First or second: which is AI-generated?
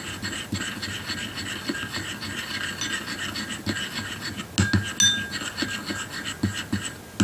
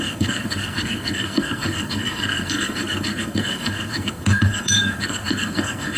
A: second